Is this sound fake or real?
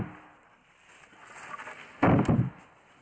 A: real